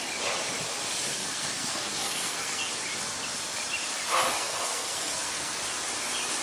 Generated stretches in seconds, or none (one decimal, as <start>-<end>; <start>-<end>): 1.1-2.7; 4.3-5.6